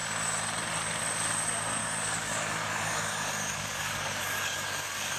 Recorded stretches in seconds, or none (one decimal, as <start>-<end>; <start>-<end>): 0.0-1.8